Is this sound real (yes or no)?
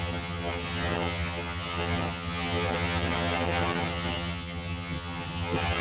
no